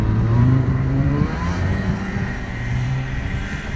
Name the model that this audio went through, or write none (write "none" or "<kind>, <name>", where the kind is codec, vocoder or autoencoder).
vocoder, BigVGAN v2